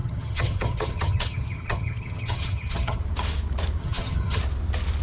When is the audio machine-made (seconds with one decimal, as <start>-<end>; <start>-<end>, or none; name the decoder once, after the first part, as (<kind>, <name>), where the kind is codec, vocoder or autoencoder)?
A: 0.0-3.0 (vocoder, HiFi-GAN); 3.8-4.4